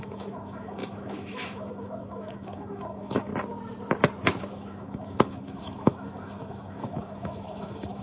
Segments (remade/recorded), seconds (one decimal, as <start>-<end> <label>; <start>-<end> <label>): 0.0-3.3 remade; 3.3-4.4 recorded; 4.4-8.0 remade